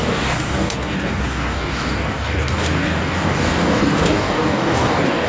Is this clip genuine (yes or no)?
no